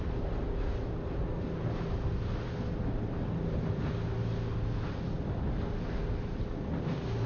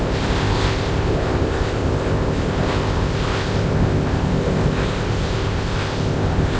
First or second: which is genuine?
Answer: first